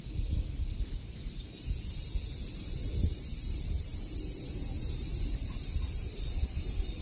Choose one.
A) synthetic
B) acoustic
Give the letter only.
B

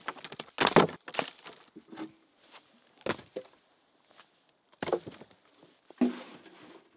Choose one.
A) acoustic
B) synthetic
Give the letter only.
A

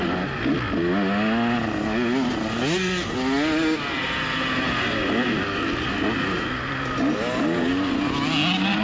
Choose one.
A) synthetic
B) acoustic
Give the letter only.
B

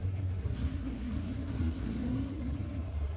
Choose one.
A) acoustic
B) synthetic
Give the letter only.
B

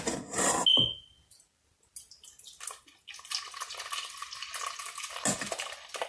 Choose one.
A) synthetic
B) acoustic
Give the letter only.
B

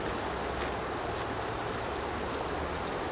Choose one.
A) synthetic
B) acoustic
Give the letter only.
B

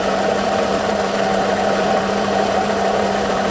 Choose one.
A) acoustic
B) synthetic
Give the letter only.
B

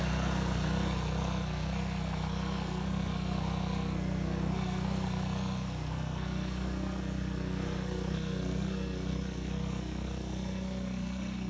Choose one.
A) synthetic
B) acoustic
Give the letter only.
A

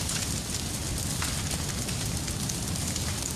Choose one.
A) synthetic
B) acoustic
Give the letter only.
B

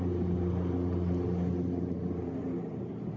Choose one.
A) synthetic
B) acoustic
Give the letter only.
B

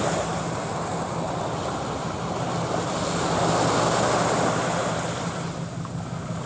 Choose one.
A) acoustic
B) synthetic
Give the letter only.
A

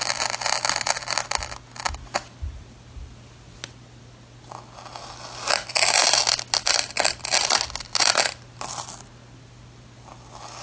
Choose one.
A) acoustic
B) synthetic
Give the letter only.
A